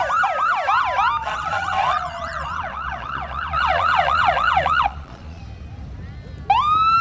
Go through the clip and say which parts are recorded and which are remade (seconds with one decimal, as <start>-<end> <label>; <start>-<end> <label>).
0.0-1.2 recorded; 1.2-5.4 remade; 5.4-7.0 recorded